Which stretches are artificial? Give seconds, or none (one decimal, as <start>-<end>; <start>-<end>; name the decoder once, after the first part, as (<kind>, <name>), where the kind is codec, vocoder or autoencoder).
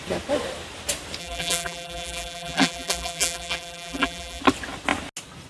1.2-4.4 (vocoder, BigVGAN v2)